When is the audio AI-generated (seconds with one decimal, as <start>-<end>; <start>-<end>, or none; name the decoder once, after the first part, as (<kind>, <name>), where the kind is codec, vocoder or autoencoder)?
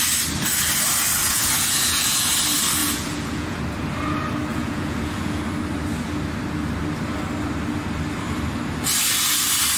1.2-2.3 (vocoder, Vocos); 2.8-3.6; 4.5-5.4